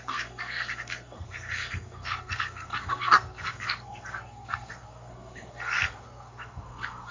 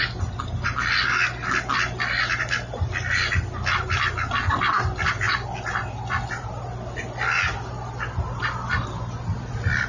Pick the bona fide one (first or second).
second